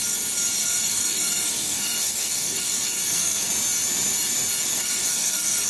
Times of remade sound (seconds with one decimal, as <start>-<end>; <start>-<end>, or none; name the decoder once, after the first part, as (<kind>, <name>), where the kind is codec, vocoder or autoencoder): 0.6-3.5 (codec, SNAC); 4.7-5.7